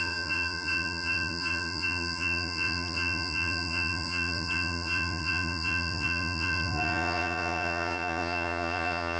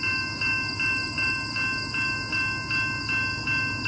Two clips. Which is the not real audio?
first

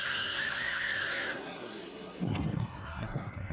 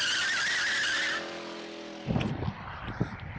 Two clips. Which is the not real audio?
first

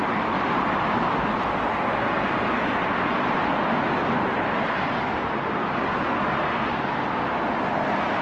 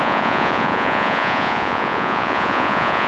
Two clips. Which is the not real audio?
second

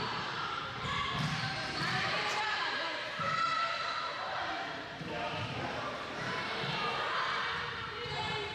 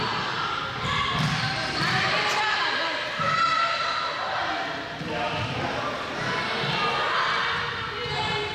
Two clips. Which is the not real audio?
first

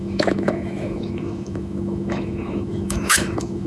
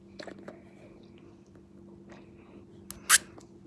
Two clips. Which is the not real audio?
first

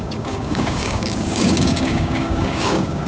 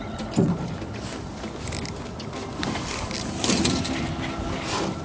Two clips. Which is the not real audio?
first